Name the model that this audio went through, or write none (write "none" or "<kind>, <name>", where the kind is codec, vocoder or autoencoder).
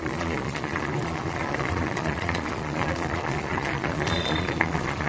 vocoder, Vocos